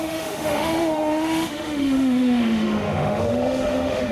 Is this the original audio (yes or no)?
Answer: no